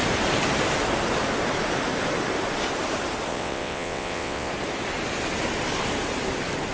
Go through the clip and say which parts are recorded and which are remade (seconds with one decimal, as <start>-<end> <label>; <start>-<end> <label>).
0.0-3.3 recorded; 3.3-4.5 remade; 4.5-6.7 recorded